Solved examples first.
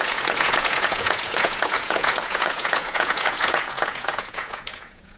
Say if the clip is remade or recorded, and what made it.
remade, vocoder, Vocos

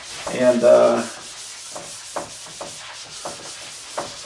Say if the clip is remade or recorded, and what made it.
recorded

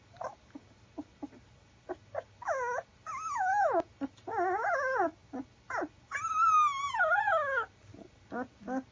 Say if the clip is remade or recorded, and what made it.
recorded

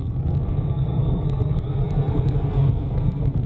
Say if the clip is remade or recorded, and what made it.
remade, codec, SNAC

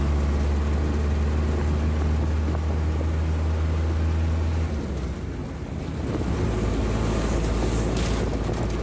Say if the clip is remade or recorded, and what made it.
recorded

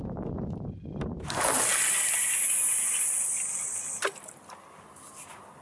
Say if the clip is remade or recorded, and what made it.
recorded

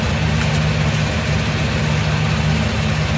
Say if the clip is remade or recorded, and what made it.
recorded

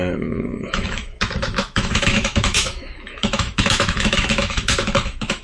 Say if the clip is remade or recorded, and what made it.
remade, autoencoder, DAC-VAE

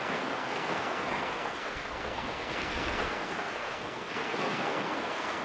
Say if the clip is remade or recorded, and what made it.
remade, codec, SNAC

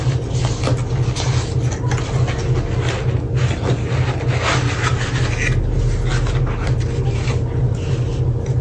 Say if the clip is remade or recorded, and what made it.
recorded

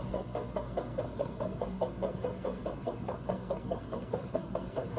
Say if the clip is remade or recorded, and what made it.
remade, codec, SNAC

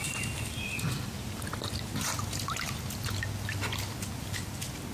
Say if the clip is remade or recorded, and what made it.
recorded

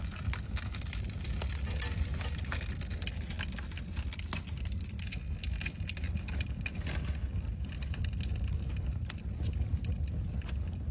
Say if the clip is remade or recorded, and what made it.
recorded